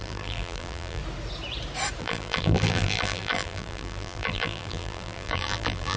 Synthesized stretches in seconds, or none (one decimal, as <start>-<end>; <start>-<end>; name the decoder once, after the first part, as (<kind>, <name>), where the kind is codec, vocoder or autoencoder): 0.0-1.0 (vocoder, BigVGAN v2); 2.0-6.0